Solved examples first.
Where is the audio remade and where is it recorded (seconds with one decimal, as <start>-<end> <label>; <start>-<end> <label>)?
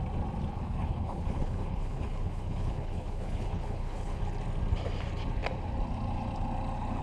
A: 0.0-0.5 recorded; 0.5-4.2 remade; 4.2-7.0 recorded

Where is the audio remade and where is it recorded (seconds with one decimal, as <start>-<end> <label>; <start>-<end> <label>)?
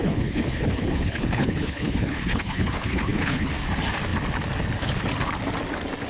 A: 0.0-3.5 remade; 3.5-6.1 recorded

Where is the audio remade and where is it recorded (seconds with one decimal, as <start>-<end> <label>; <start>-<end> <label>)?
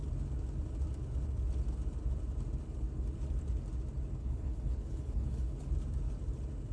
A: 0.0-4.2 recorded; 4.2-5.7 remade; 5.7-6.7 recorded